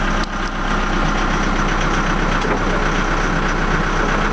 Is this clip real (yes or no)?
yes